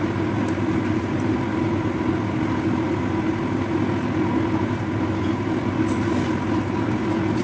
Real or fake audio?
real